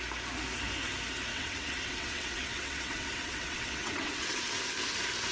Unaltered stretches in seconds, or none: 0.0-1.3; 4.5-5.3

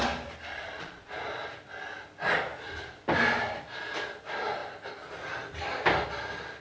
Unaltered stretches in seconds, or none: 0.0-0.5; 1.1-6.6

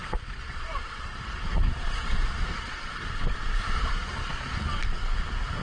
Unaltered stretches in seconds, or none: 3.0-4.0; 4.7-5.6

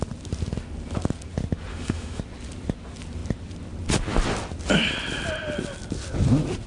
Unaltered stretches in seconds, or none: 0.0-1.7; 2.2-6.7

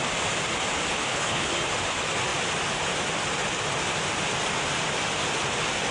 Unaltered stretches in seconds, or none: 0.0-0.9; 1.5-5.9

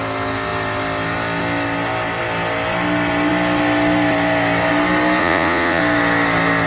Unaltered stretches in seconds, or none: 0.0-5.2; 5.8-6.7

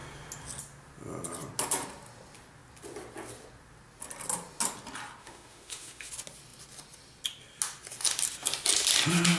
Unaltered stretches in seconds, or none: 0.0-5.2; 6.1-9.4

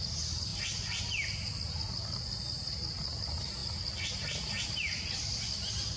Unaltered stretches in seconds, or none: 0.0-6.0